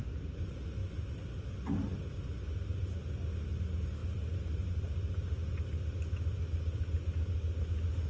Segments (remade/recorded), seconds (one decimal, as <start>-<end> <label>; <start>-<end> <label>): 0.0-4.0 recorded; 4.0-4.7 remade; 4.7-8.1 recorded